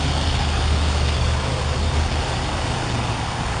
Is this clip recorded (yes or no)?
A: no